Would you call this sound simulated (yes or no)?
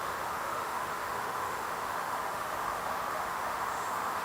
yes